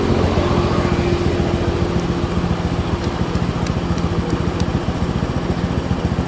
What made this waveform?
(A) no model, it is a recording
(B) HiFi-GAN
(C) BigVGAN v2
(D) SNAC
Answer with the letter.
A